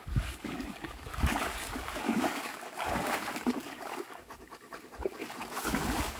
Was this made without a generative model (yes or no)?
no